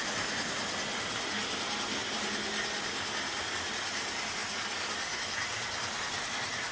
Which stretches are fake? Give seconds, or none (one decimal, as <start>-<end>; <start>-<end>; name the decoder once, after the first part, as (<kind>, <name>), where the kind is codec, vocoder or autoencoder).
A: none